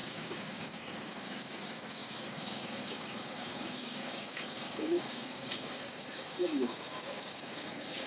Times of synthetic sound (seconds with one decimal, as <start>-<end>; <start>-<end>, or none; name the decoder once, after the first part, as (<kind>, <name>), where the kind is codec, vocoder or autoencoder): 0.0-8.1 (codec, DAC)